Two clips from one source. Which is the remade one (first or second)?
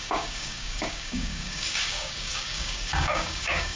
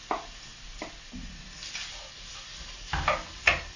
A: first